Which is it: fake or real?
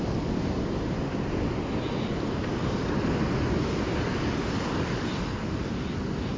real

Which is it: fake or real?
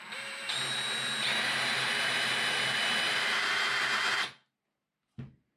real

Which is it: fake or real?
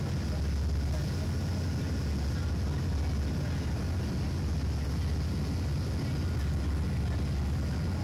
real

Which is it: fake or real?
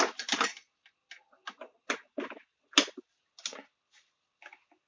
real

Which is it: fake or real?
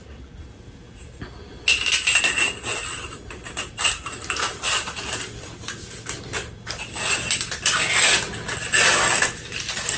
real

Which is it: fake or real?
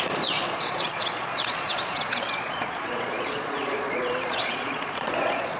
fake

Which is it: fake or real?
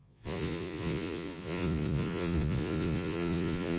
fake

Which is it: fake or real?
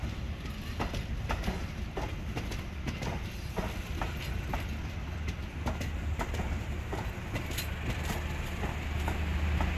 real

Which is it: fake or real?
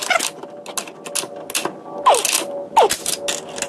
real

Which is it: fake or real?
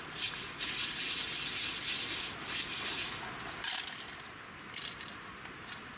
real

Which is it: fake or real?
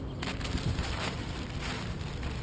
real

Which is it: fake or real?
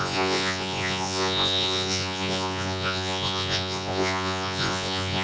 fake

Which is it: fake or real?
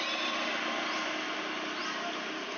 real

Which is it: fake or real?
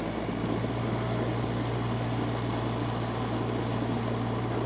real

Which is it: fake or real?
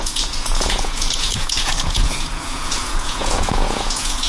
fake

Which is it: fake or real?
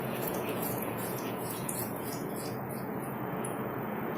fake